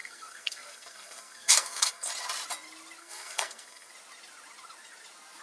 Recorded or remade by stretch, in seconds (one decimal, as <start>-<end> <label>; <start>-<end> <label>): 0.0-2.1 remade; 2.1-3.0 recorded; 3.0-3.9 remade; 3.9-5.4 recorded